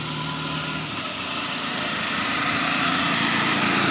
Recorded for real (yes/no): yes